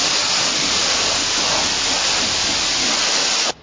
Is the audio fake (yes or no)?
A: no